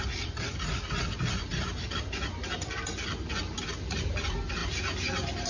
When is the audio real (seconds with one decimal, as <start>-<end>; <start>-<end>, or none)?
0.0-5.5